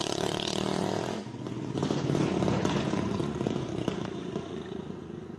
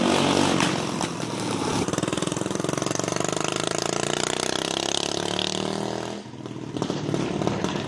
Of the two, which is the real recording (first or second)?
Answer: second